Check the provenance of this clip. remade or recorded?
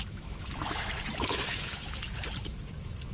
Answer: remade